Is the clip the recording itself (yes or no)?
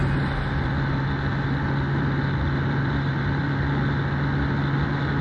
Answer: yes